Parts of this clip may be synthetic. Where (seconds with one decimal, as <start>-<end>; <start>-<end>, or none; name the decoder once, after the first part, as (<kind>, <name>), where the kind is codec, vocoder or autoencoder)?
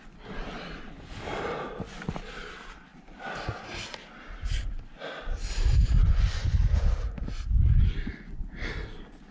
6.0-6.8 (vocoder, Vocos); 7.7-8.4